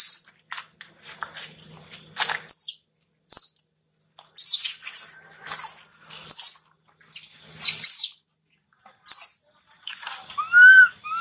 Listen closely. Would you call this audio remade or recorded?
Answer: recorded